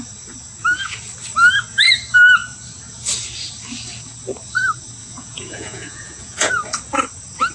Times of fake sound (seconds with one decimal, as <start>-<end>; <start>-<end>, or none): 5.0-6.5